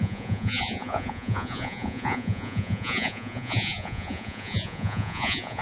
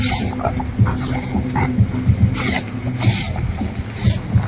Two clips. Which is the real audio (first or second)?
second